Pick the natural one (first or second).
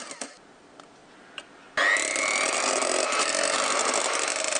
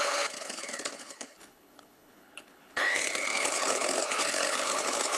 first